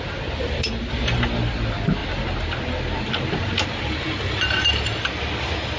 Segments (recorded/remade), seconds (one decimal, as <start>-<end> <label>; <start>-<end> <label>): 0.0-5.8 recorded